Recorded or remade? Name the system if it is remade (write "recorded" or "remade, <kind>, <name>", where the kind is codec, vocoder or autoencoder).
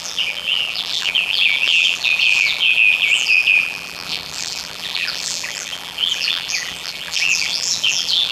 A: remade, vocoder, BigVGAN v2